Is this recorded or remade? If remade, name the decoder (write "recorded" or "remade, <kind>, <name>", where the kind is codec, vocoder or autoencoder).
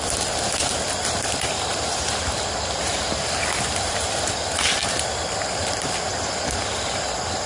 recorded